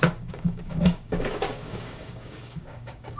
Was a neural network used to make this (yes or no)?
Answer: yes